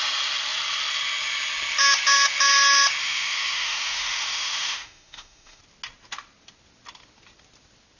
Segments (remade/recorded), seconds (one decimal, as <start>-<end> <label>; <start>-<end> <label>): 0.0-3.0 recorded; 3.0-5.6 remade; 5.6-8.0 recorded